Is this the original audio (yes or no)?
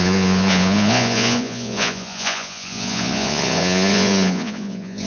no